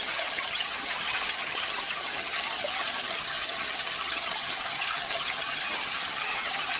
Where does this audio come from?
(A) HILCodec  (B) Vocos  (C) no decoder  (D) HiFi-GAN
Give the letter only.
D